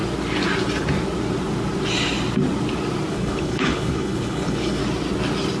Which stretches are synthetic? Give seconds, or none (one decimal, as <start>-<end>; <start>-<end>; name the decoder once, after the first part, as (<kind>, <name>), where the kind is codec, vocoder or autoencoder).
3.1-4.8 (codec, HILCodec)